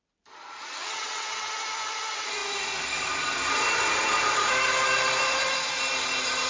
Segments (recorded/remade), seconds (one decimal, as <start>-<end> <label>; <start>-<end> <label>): 0.0-0.8 recorded; 0.8-1.5 remade; 1.5-6.5 recorded